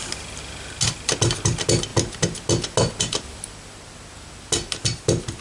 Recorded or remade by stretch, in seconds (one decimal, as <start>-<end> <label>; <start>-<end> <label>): 0.0-5.4 recorded